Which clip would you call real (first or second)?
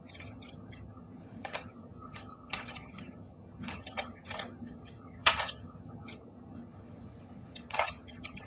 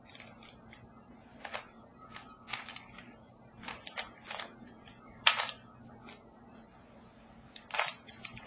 second